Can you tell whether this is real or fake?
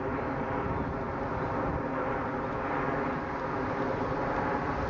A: real